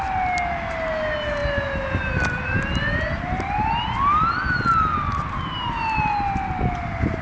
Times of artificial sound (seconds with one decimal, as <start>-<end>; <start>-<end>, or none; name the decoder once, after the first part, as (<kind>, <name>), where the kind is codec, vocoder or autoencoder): none